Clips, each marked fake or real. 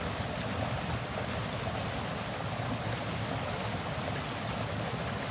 real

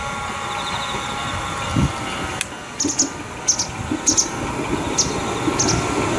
real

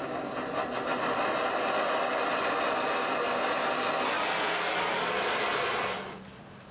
real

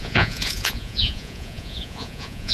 fake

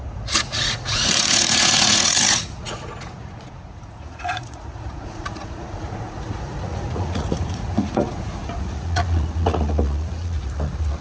fake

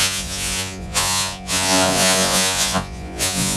fake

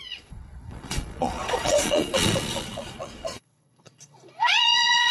fake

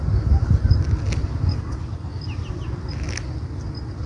real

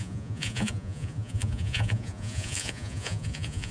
fake